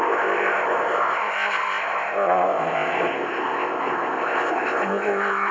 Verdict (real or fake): fake